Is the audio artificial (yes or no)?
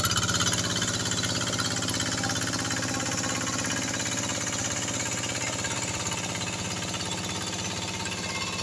no